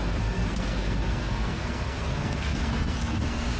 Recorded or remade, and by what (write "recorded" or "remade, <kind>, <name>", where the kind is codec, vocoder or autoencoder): remade, codec, SNAC